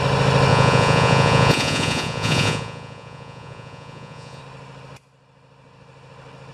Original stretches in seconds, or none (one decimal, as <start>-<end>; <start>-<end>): 0.0-0.5; 4.4-6.5